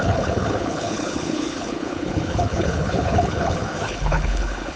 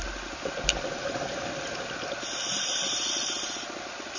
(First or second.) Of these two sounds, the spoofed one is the first